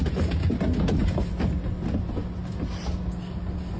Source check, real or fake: real